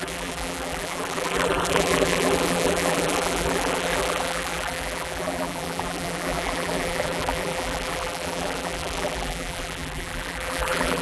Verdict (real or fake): fake